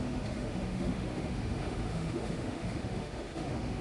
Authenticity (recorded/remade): remade